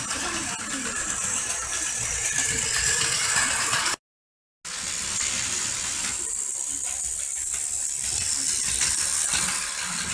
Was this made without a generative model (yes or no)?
yes